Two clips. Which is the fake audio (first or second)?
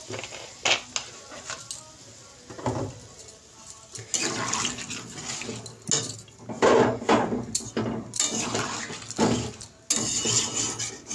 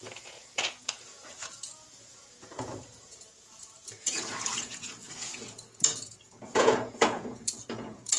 second